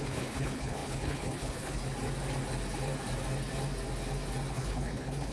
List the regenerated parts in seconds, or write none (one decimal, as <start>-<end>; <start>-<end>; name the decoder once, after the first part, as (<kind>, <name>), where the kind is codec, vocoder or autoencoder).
0.0-1.8 (codec, HILCodec); 4.5-5.3